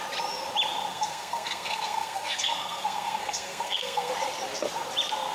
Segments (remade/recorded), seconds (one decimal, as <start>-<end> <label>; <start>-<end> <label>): 0.0-0.9 recorded; 0.9-4.1 remade; 4.1-5.3 recorded